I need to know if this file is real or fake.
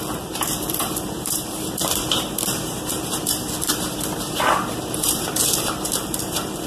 fake